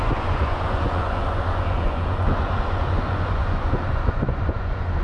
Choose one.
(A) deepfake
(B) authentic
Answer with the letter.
A